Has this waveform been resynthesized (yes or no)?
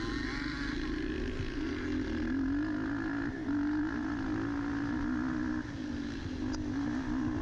no